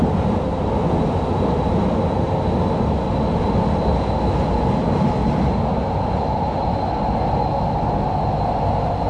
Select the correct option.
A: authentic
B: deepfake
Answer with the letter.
A